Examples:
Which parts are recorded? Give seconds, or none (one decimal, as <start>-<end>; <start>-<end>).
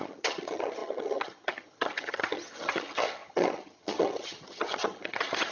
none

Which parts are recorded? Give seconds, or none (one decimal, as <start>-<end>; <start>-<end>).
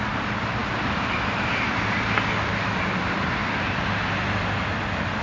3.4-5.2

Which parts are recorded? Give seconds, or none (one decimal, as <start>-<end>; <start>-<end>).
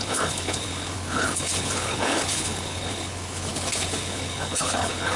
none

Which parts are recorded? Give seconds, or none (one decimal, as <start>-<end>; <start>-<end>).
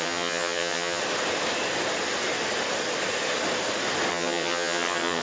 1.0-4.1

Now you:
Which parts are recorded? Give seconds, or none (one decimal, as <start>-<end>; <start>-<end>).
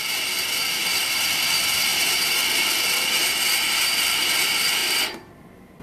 0.0-0.8; 1.5-4.8; 5.3-5.8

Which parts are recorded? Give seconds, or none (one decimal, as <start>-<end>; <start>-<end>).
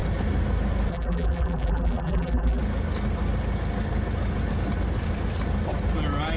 0.0-0.9; 2.6-6.4